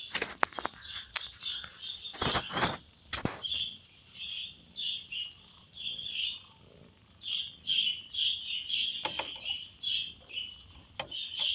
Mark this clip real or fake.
real